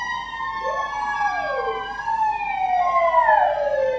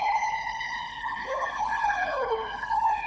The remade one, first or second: second